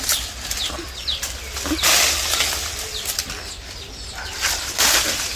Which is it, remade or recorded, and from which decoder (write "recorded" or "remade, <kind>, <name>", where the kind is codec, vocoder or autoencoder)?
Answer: recorded